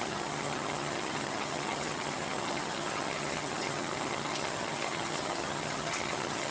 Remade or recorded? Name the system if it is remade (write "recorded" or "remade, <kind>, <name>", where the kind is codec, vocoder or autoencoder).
remade, vocoder, HiFi-GAN